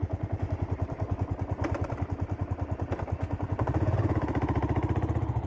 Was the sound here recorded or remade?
remade